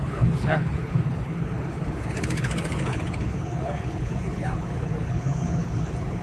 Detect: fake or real fake